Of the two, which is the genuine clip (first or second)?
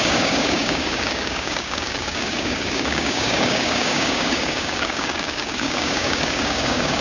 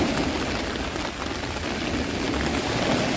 second